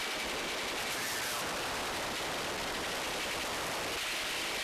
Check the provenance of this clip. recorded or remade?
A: remade